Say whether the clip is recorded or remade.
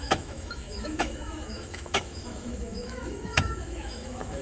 remade